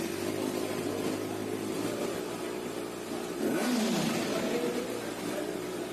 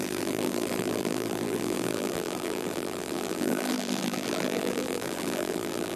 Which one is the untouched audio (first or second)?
first